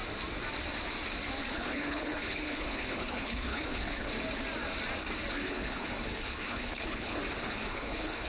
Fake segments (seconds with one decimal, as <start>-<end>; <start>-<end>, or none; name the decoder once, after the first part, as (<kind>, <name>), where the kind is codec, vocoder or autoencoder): 1.5-4.1 (codec, HILCodec); 5.3-7.2; 7.7-8.3